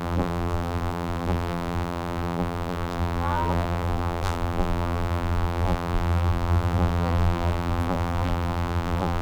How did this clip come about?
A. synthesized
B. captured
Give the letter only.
A